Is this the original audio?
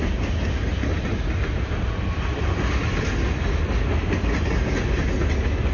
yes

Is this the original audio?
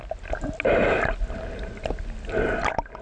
yes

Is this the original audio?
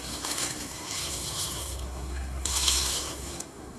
no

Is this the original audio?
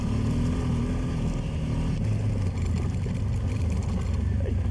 yes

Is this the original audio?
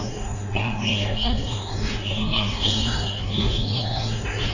no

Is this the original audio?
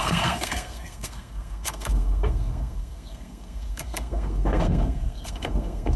no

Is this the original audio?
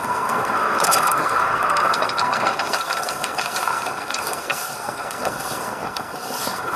no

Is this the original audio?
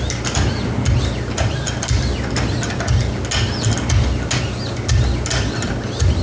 yes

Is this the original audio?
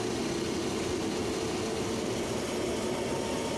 yes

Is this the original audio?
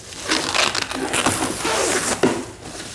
yes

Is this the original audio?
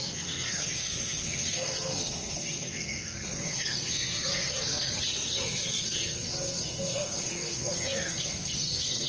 no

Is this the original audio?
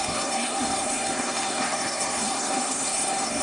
no